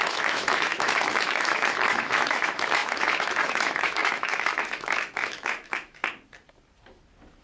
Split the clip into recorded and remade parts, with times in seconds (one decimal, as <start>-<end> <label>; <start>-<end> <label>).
0.0-6.0 remade; 6.0-7.4 recorded